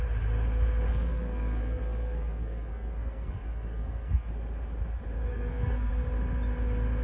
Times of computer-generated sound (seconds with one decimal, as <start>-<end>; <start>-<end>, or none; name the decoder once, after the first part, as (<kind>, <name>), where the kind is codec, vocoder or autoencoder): 0.9-4.3 (codec, SNAC); 5.3-5.9